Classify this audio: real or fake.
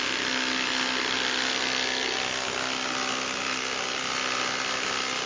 real